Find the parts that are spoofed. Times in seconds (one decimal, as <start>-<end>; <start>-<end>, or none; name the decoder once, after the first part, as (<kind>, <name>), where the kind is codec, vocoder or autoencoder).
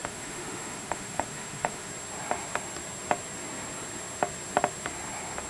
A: 0.0-1.9 (autoencoder, DAC-VAE)